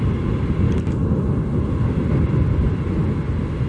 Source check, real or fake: real